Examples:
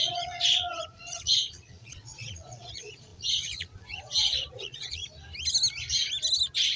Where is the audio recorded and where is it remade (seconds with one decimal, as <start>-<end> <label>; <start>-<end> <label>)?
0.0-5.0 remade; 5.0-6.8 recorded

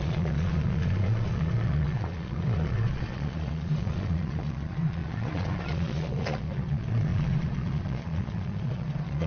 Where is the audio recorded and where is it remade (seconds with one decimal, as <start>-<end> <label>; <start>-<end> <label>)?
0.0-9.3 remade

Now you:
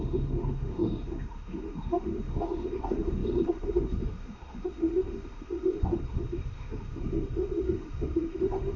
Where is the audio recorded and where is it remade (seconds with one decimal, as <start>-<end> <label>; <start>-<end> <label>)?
0.0-8.8 remade